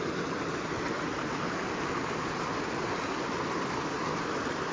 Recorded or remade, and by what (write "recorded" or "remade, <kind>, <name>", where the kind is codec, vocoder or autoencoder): recorded